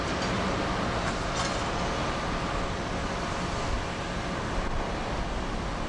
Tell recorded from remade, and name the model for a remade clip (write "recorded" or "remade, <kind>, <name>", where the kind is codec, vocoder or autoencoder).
recorded